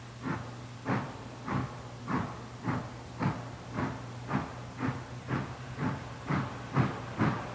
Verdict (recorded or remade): recorded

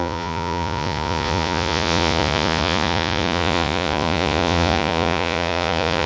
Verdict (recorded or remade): remade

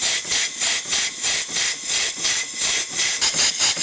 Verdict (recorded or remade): recorded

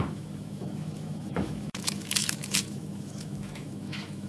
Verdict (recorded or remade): remade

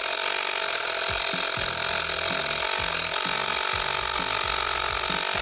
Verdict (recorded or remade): recorded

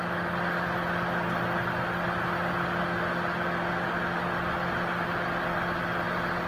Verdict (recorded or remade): recorded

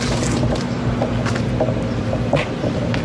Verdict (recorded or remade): recorded